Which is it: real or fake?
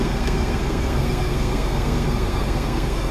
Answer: fake